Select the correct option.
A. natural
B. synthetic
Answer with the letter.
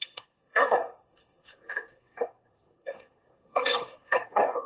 B